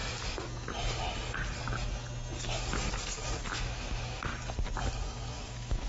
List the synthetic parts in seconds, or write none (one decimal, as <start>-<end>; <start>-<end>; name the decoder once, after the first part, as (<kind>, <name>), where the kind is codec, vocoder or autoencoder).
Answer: 3.5-4.3 (autoencoder, DAC-VAE); 5.3-5.9